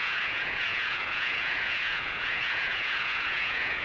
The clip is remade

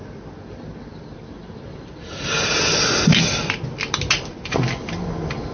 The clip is recorded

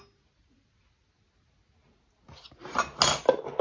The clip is recorded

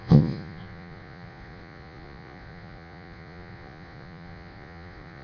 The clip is remade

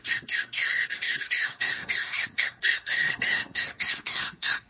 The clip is remade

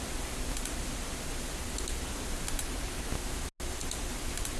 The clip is recorded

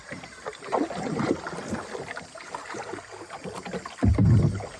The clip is recorded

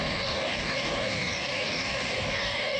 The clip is remade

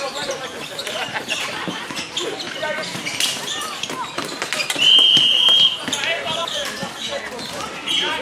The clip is remade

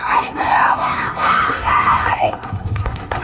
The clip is remade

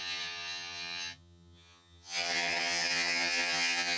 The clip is remade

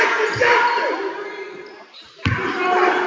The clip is recorded